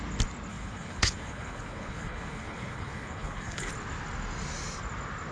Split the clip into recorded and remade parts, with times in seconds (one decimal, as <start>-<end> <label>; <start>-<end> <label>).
0.0-0.5 recorded; 0.5-3.7 remade; 3.7-5.3 recorded